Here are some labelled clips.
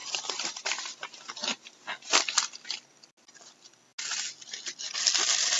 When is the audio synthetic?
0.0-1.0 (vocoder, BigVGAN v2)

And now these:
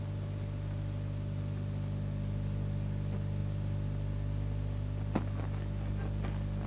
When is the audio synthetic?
none

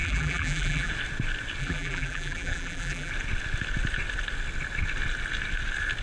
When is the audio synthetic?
0.0-0.9 (vocoder, BigVGAN v2); 1.6-3.1

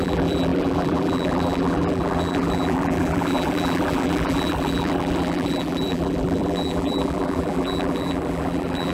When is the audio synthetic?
0.0-8.9 (vocoder, BigVGAN v2)

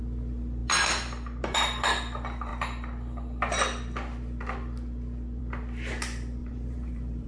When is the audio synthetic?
6.4-7.3 (vocoder, BigVGAN v2)

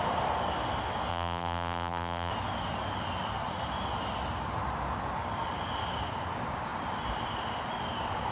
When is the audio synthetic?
1.1-2.3 (vocoder, BigVGAN v2)

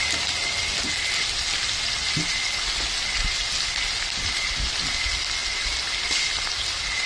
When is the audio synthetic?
none

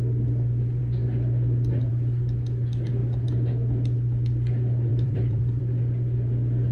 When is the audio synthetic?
4.9-5.6 (vocoder, BigVGAN v2)